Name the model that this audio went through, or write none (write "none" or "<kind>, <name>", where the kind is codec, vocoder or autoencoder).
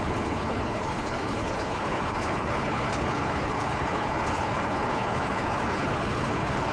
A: codec, HILCodec